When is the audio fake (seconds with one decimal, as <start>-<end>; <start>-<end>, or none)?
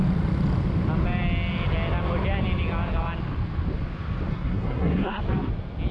4.3-5.2